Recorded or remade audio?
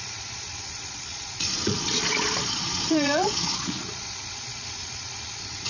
remade